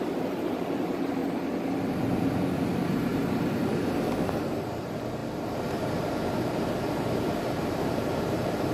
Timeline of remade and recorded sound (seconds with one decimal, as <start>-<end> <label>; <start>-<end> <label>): 0.0-1.2 remade; 1.2-2.3 recorded; 2.3-8.7 remade